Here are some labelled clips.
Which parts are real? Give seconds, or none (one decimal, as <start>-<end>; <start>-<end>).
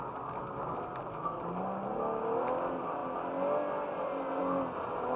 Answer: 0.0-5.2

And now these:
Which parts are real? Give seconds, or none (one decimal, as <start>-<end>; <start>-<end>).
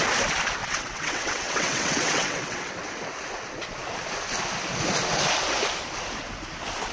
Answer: 0.0-0.6; 2.7-6.9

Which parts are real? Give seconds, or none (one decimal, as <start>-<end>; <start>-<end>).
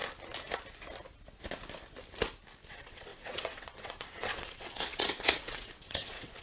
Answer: 0.0-2.7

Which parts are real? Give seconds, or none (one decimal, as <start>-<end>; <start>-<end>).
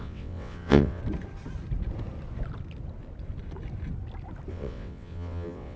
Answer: 1.0-4.5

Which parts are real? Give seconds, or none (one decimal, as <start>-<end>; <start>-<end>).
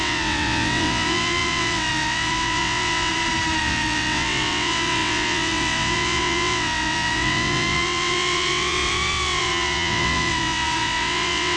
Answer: 3.1-3.6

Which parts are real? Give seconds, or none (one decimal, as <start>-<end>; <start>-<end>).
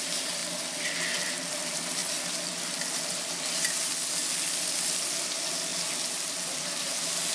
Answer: 0.0-7.3